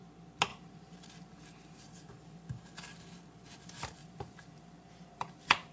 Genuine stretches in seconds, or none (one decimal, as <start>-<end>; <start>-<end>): 0.0-0.5; 2.1-4.0